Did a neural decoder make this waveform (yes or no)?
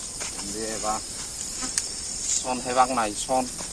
no